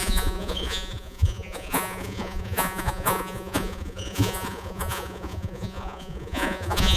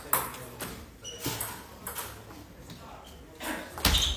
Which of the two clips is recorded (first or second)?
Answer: second